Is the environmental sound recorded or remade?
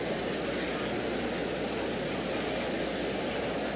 recorded